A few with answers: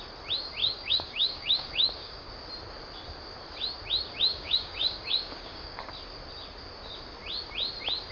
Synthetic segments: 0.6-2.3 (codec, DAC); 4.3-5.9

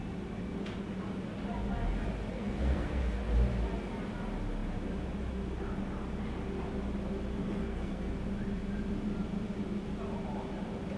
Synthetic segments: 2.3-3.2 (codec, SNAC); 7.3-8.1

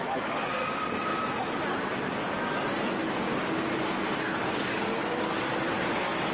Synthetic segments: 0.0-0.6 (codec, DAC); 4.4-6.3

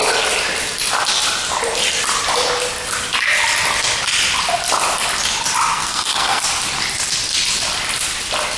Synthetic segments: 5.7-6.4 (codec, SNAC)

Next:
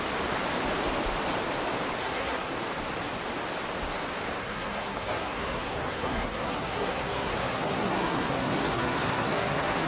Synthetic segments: 2.0-2.5 (codec, SNAC); 4.4-9.9

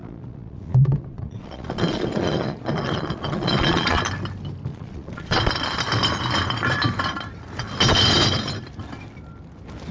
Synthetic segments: 0.0-4.0 (vocoder, Vocos); 4.7-5.4